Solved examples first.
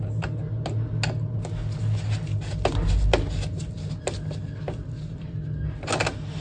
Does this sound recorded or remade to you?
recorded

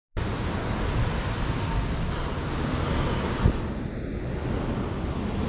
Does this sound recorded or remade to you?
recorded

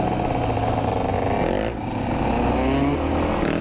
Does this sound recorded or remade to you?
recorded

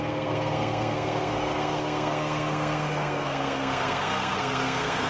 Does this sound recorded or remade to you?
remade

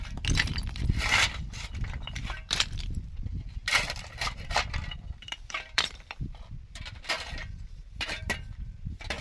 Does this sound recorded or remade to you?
remade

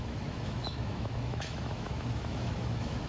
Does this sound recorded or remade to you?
remade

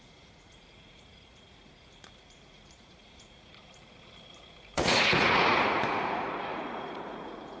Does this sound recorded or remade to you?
remade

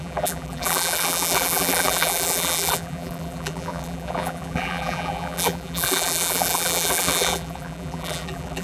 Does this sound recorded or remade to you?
remade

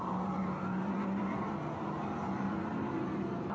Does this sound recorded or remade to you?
recorded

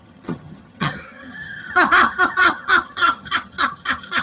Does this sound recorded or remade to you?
remade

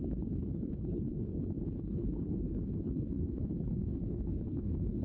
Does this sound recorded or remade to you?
remade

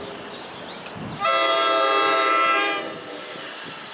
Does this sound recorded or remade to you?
recorded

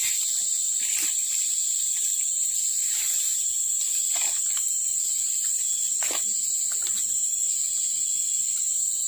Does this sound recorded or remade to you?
recorded